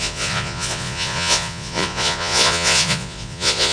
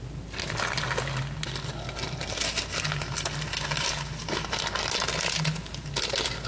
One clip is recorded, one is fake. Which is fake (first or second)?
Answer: first